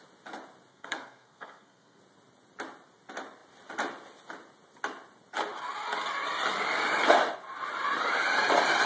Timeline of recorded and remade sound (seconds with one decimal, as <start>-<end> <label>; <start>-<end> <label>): 0.0-0.7 recorded; 0.7-2.0 remade; 2.0-8.9 recorded